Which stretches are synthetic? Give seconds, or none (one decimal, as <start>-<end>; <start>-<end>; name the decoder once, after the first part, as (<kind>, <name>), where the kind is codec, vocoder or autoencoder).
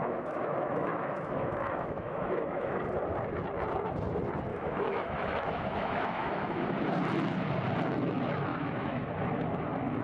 0.0-2.8 (autoencoder, DAC-VAE); 4.5-6.6; 8.5-9.1